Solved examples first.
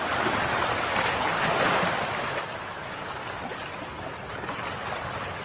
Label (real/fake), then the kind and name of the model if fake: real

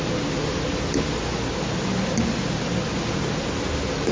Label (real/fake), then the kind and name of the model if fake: real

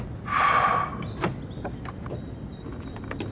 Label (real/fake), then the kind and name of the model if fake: real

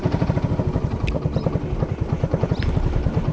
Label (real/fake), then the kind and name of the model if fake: real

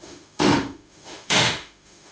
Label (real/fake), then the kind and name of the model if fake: fake, autoencoder, DAC-VAE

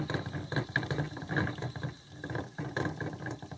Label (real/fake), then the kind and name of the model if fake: real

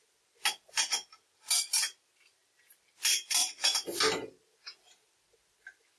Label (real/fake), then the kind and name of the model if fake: real